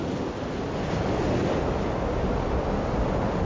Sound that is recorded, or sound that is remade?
recorded